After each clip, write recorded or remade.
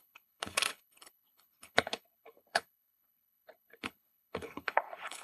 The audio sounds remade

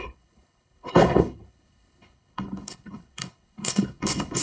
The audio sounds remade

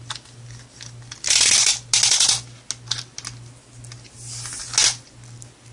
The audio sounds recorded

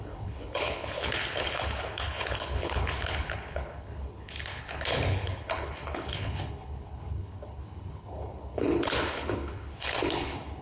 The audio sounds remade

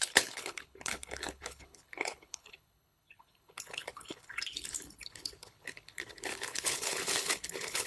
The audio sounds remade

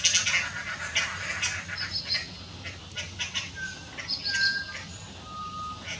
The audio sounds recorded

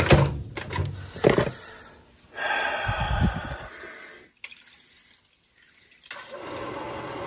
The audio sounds recorded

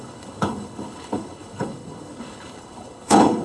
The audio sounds remade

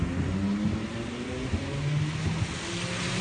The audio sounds recorded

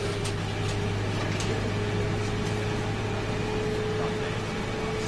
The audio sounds recorded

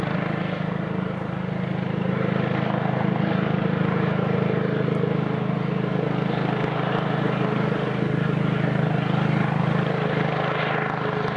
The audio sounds recorded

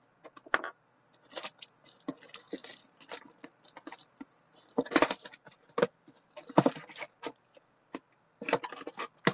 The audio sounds recorded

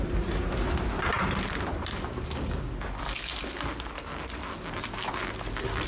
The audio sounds recorded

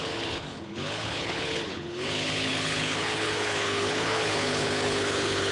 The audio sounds remade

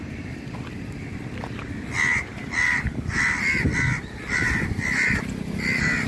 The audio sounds recorded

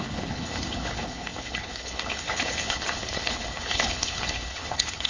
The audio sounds remade